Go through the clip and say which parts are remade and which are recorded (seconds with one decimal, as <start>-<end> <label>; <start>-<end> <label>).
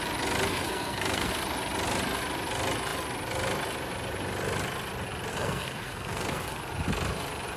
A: 0.0-0.5 recorded; 0.5-1.3 remade; 1.3-5.3 recorded; 5.3-6.6 remade; 6.6-7.6 recorded